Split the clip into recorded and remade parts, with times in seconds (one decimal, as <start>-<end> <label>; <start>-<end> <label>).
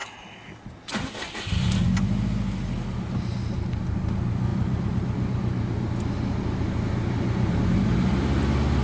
0.0-8.8 recorded